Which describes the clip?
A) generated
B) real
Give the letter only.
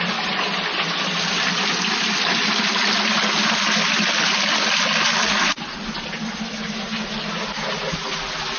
B